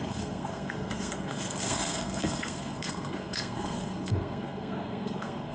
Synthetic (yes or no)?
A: yes